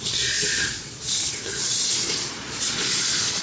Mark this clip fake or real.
fake